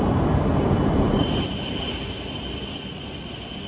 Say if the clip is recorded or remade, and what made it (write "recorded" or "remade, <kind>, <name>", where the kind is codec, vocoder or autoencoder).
recorded